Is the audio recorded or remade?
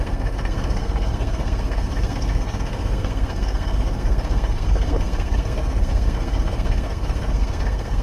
remade